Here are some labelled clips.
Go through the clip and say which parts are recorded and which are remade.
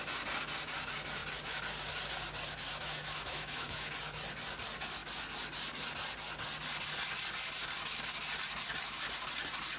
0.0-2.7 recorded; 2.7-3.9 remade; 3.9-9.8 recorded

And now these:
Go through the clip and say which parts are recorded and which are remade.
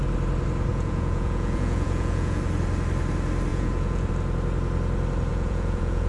0.0-0.7 recorded; 0.7-2.4 remade; 2.4-3.5 recorded; 3.5-4.1 remade; 4.1-5.3 recorded; 5.3-6.1 remade